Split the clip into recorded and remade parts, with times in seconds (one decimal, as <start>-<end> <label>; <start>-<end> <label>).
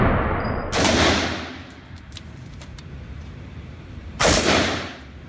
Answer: 0.0-1.6 recorded; 1.6-4.8 remade; 4.8-5.3 recorded